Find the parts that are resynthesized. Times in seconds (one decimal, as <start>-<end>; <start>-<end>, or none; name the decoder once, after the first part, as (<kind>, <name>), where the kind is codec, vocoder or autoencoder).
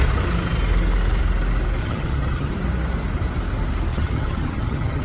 1.8-2.5 (vocoder, HiFi-GAN); 3.9-5.0